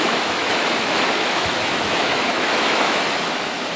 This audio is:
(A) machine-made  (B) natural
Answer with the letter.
A